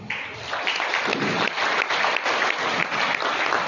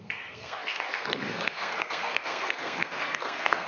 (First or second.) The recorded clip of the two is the first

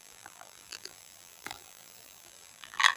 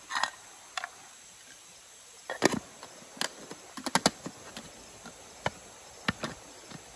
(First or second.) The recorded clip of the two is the second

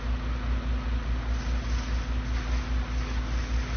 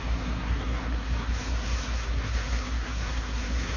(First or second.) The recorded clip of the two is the first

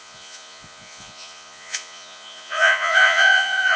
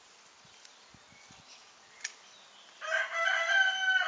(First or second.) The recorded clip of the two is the second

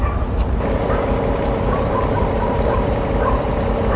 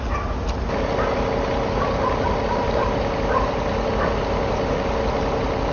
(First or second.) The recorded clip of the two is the second